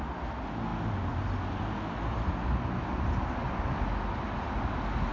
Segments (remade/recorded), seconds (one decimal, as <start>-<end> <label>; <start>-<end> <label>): 0.0-5.1 recorded